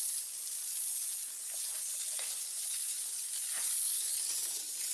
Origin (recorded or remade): recorded